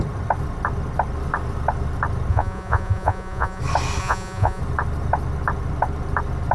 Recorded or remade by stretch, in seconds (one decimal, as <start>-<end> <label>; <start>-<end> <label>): 0.0-2.3 recorded; 2.3-3.6 remade; 3.6-4.0 recorded; 4.0-4.6 remade; 4.6-6.5 recorded